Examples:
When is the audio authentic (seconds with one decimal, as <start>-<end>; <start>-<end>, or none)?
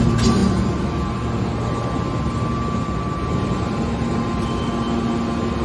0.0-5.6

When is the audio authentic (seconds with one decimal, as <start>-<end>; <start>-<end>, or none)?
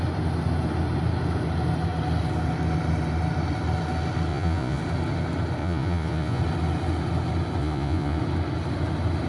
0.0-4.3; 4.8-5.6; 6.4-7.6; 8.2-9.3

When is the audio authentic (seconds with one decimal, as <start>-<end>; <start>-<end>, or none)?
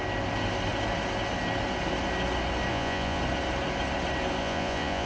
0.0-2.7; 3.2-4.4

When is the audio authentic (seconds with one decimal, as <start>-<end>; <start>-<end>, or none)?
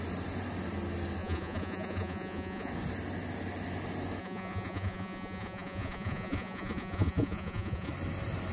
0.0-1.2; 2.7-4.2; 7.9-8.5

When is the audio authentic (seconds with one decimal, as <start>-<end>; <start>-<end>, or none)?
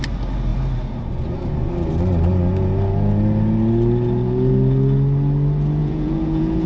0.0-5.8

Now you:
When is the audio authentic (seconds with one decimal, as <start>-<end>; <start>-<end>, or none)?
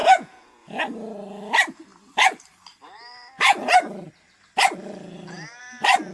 0.8-6.1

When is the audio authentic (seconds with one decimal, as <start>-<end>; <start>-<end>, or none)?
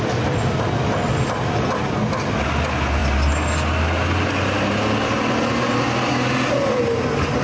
0.0-7.4